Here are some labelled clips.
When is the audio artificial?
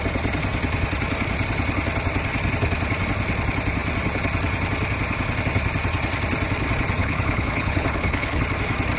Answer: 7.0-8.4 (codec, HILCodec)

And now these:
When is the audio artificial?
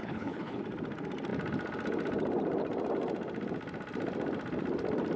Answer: 0.0-0.6 (codec, HILCodec)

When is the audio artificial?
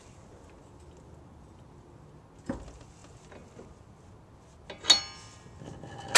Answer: none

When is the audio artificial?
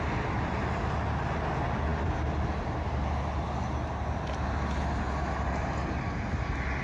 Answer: none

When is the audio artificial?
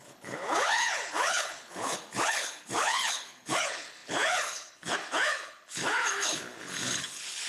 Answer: 0.0-7.5 (codec, HILCodec)